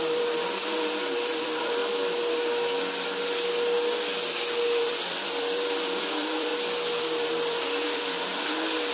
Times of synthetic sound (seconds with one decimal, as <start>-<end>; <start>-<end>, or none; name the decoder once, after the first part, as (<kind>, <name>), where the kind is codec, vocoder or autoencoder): 0.0-1.8 (vocoder, BigVGAN v2); 4.8-6.5; 7.3-8.9